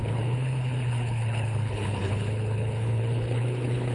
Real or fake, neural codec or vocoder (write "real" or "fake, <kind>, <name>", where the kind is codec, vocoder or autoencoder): fake, codec, HILCodec